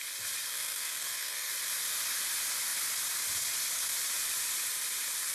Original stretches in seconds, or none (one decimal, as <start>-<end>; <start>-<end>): 0.0-0.5; 1.5-5.3